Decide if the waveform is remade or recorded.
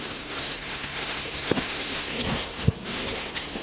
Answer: remade